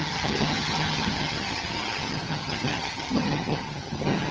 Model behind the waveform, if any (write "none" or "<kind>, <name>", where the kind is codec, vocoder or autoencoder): vocoder, HiFi-GAN